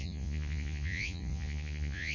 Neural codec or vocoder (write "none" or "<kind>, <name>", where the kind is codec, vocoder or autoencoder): vocoder, Vocos